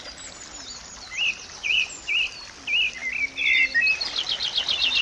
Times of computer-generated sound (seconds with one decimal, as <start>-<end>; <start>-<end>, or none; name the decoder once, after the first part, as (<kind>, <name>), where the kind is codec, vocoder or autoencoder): 1.6-2.1 (vocoder, Vocos)